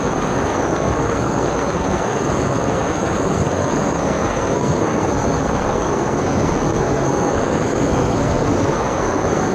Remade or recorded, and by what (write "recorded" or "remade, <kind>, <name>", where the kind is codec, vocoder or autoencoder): remade, codec, SNAC